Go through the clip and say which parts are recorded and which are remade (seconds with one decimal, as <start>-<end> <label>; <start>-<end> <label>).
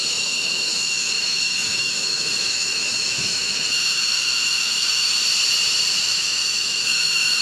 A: 0.0-5.2 remade; 5.2-5.9 recorded; 5.9-7.4 remade